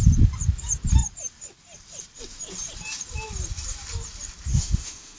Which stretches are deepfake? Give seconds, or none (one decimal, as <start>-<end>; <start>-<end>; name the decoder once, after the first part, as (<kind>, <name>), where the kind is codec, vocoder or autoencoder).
4.5-5.2 (autoencoder, DAC-VAE)